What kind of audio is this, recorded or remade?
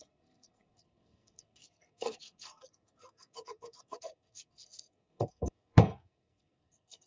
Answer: remade